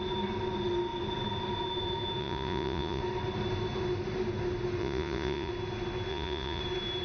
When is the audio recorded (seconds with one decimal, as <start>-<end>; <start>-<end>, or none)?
0.0-2.2; 3.0-4.8; 5.5-6.1; 6.6-7.0